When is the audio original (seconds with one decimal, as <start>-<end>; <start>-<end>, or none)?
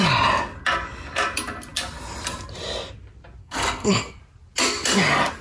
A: 0.0-3.4; 4.2-5.4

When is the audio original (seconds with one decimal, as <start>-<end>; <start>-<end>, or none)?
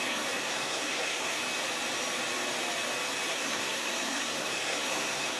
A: 1.4-3.3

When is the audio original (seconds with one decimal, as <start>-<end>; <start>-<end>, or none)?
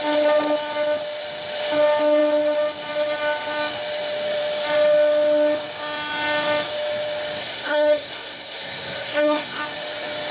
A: 0.0-7.4; 9.6-10.3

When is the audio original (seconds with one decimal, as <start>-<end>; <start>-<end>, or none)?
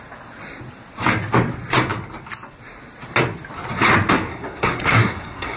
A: 0.0-4.3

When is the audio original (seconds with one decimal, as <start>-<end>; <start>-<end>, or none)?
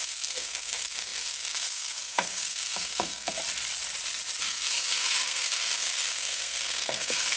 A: 3.4-4.4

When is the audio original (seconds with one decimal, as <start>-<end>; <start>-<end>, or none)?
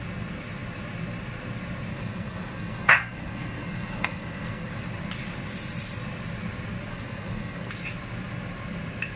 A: 0.0-1.9; 4.7-6.9; 7.7-9.2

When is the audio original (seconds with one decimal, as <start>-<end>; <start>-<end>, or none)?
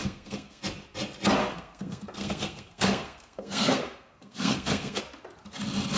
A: 0.6-1.4; 5.0-6.0